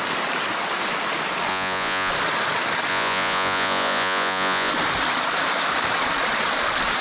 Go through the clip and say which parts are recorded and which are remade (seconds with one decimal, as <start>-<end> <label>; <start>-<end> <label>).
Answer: 0.0-1.5 recorded; 1.5-2.1 remade; 2.1-2.9 recorded; 2.9-4.7 remade; 4.7-7.0 recorded